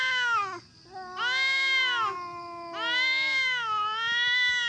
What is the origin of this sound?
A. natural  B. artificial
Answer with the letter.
A